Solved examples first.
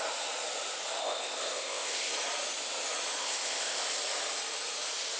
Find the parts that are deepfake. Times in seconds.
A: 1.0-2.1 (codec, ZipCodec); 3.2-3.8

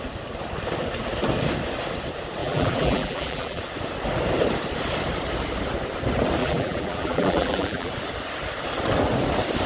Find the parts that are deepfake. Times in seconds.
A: 2.4-3.6 (vocoder, BigVGAN v2); 6.4-7.9

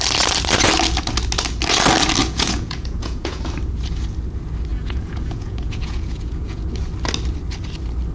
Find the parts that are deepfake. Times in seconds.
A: 2.2-3.4 (vocoder, Vocos); 4.7-6.7